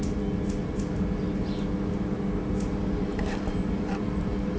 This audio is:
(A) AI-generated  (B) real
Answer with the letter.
B